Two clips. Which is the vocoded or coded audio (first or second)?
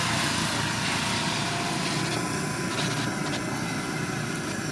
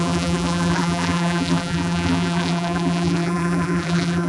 second